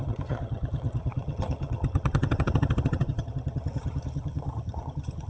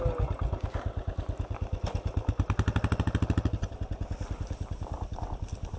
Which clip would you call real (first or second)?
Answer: second